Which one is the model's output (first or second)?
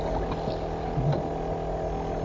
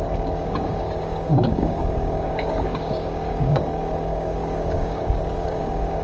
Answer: second